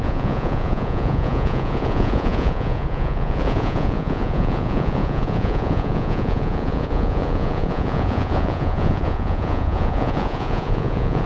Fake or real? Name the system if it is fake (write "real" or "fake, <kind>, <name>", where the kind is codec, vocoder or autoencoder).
fake, vocoder, Vocos